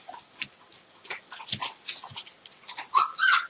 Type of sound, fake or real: real